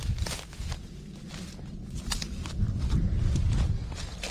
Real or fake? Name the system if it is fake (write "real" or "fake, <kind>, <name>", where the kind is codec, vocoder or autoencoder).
real